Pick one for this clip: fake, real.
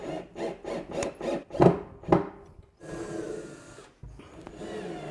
real